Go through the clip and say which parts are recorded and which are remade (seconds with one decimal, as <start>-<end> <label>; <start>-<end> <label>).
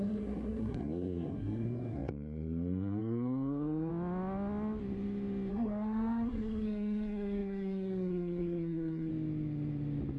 0.0-3.9 remade; 3.9-5.5 recorded; 5.5-9.1 remade; 9.1-10.2 recorded